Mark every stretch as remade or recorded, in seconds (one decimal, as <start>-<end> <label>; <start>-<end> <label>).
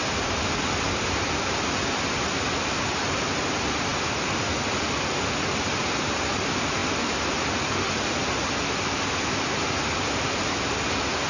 0.0-11.3 recorded